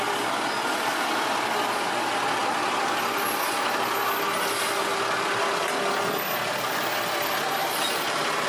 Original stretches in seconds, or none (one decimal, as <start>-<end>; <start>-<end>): 0.0-7.6